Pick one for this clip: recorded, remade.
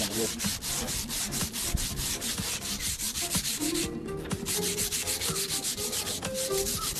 remade